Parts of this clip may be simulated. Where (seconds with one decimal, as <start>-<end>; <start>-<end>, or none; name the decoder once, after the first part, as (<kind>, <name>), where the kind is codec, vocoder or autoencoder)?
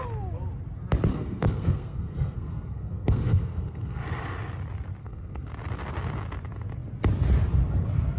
1.1-4.0 (codec, SNAC); 5.0-5.5